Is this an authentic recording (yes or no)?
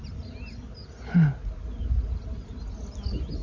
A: yes